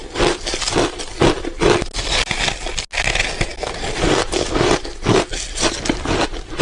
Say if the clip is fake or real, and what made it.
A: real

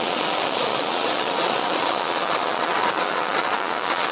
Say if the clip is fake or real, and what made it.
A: fake, vocoder, Vocos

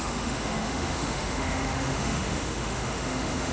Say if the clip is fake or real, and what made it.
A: fake, autoencoder, DAC-VAE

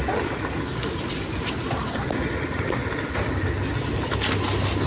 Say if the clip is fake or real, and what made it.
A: real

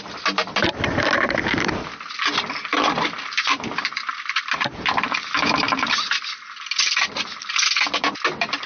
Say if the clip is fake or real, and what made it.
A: fake, vocoder, BigVGAN v2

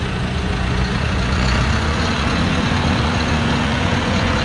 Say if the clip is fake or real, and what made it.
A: fake, vocoder, Vocos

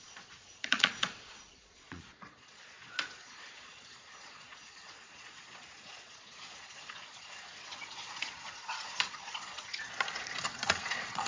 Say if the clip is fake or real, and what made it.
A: fake, vocoder, Vocos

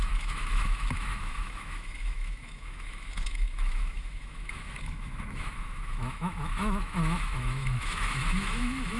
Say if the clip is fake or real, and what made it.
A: fake, autoencoder, DAC-VAE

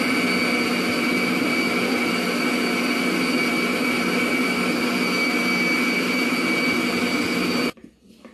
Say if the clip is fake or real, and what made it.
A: real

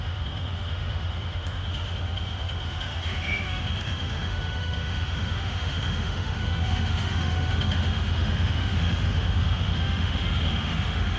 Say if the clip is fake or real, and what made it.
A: fake, autoencoder, DAC-VAE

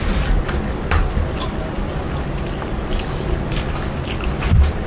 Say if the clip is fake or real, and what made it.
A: real